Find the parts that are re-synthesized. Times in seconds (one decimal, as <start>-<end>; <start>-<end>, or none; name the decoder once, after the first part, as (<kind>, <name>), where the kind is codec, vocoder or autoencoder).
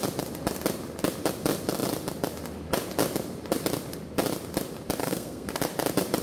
5.0-5.5 (codec, SNAC)